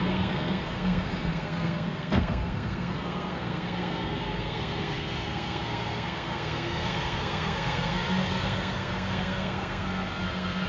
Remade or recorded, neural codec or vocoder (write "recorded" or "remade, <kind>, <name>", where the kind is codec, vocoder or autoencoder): remade, codec, SNAC